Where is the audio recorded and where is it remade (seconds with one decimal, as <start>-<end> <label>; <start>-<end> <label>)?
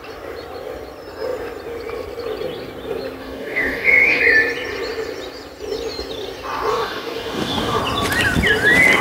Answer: 0.0-3.2 recorded; 3.2-4.2 remade; 4.2-6.7 recorded; 6.7-7.8 remade; 7.8-9.0 recorded